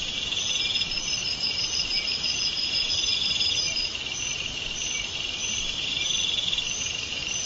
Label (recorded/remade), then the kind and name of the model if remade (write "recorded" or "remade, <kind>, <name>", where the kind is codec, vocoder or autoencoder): remade, vocoder, BigVGAN v2